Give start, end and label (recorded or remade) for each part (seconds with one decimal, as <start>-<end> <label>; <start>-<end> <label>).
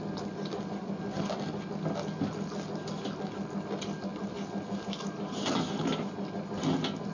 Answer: 0.0-7.1 recorded